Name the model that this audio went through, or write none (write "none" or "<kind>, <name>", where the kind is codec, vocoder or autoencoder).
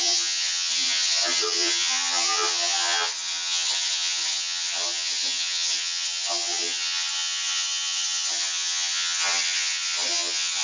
vocoder, HiFi-GAN